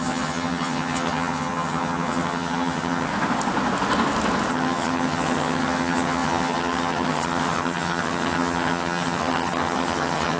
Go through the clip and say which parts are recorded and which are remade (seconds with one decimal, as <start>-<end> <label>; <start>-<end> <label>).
0.0-3.1 remade; 3.1-4.5 recorded; 4.5-10.4 remade